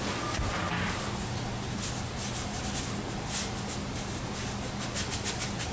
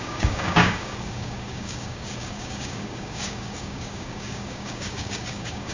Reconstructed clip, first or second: second